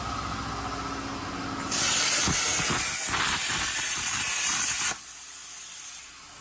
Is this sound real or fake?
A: real